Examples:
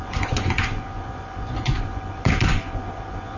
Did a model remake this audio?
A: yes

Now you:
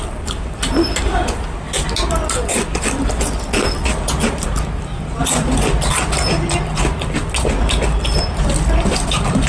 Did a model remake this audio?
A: no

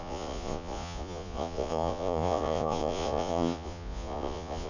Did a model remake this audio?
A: yes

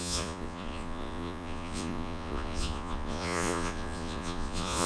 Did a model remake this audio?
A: yes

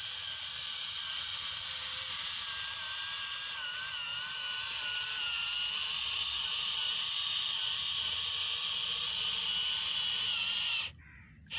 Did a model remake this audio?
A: no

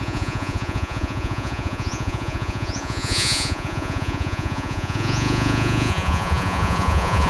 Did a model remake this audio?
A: yes